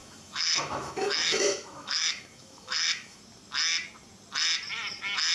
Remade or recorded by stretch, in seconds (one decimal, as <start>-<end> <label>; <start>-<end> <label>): 0.0-3.2 remade; 3.2-5.3 recorded